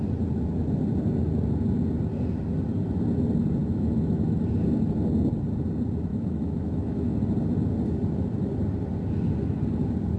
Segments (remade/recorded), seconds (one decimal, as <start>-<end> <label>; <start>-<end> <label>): 0.0-3.6 recorded; 3.6-4.4 remade; 4.4-6.1 recorded; 6.1-7.1 remade; 7.1-10.2 recorded